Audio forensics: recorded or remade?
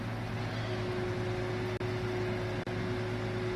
recorded